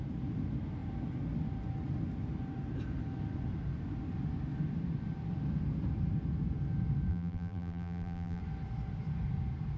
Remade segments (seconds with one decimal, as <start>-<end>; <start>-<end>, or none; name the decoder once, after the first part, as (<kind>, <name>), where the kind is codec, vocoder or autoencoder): 7.1-8.4 (vocoder, BigVGAN v2)